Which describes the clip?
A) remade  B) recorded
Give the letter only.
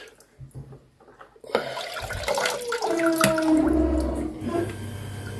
B